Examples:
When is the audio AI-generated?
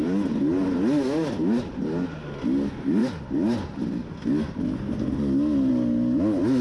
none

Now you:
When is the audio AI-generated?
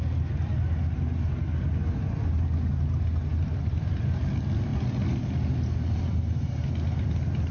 3.3-4.2 (vocoder, BigVGAN v2)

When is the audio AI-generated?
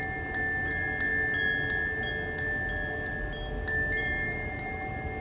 4.0-4.6 (vocoder, BigVGAN v2)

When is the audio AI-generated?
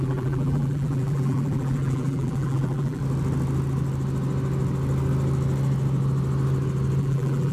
0.0-3.0 (vocoder, BigVGAN v2); 7.0-7.5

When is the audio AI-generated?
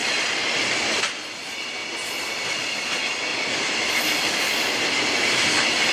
0.0-0.6 (vocoder, BigVGAN v2); 3.3-4.9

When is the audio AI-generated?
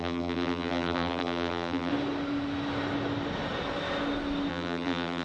0.0-1.9 (vocoder, BigVGAN v2); 4.5-5.2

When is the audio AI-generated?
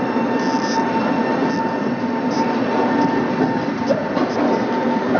none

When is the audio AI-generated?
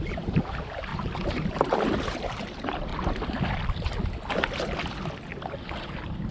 0.0-0.9 (vocoder, BigVGAN v2); 1.5-2.9; 5.3-6.3